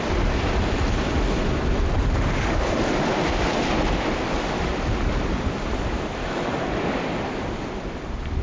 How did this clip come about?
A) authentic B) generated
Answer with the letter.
A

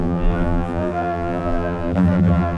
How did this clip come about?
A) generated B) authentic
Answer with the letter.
A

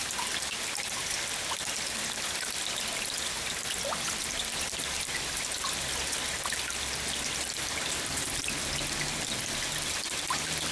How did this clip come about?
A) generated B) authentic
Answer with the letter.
B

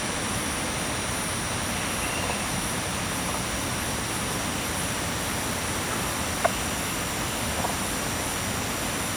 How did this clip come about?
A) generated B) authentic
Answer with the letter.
B